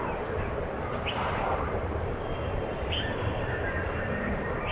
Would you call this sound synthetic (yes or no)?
yes